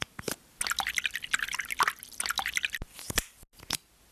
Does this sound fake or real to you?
real